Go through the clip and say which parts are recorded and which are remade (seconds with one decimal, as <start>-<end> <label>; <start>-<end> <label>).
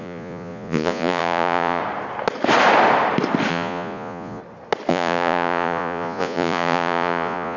0.0-1.8 remade; 1.8-3.5 recorded; 3.5-4.4 remade; 4.4-4.9 recorded; 4.9-7.6 remade